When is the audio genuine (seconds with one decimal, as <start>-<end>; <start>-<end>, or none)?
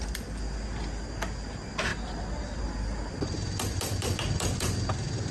0.0-5.3